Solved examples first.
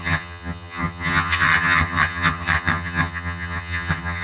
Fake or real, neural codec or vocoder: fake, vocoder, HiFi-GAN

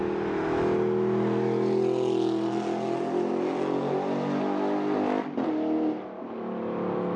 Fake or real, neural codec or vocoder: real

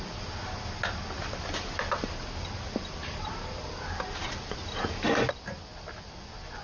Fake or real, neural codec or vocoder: real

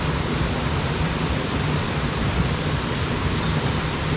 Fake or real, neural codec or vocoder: real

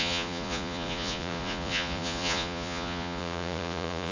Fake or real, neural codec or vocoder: fake, vocoder, Vocos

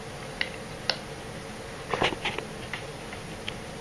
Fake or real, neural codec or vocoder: real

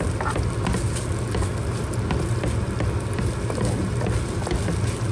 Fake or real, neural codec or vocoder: real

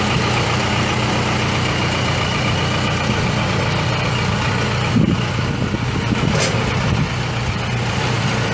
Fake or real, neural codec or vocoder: real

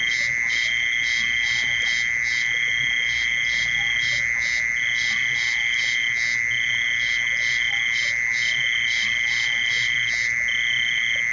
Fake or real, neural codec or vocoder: real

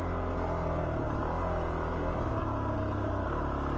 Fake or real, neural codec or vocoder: real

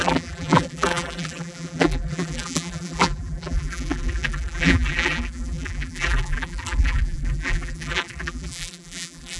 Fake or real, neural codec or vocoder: fake, vocoder, BigVGAN v2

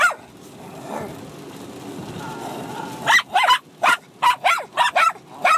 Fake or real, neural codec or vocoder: real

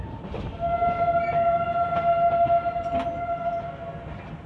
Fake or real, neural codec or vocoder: real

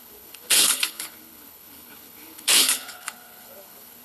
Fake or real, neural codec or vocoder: fake, codec, HILCodec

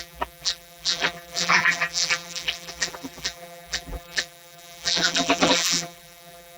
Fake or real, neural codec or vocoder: fake, vocoder, BigVGAN v2